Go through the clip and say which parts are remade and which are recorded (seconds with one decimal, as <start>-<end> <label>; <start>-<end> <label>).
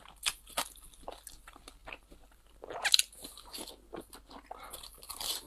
0.0-5.5 recorded